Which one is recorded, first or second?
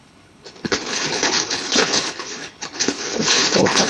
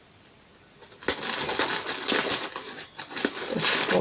second